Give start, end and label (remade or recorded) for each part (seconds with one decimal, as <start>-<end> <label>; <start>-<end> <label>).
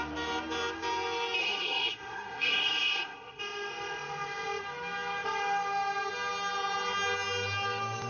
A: 0.0-1.4 recorded; 1.4-3.4 remade; 3.4-8.1 recorded